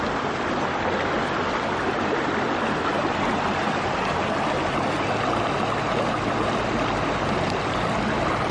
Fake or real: real